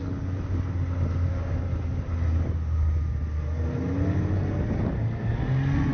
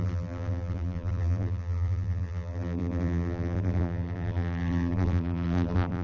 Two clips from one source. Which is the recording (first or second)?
first